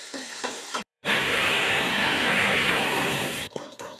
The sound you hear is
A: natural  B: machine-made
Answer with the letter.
B